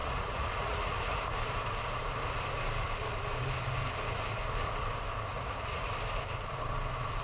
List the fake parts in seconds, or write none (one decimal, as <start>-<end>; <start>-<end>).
0.0-1.2; 5.3-5.9